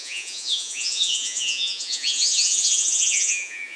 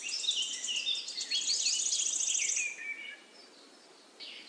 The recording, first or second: second